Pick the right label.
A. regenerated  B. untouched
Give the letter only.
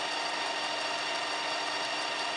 B